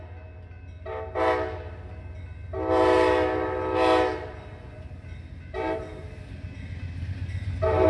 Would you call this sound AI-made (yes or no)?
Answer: no